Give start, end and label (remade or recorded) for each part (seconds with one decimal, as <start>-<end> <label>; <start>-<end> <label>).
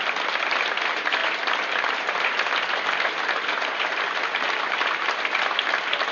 0.0-6.1 recorded